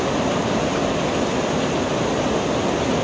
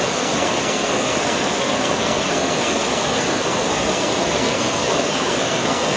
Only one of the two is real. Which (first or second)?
first